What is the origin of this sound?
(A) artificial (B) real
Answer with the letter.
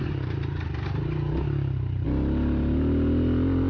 B